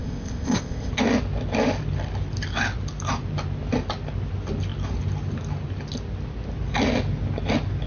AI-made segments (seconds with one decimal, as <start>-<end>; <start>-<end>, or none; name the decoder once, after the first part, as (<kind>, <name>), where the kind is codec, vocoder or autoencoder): 0.0-0.9 (codec, ZipCodec)